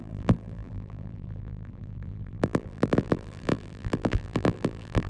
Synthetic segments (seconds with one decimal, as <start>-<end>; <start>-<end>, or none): 0.0-5.1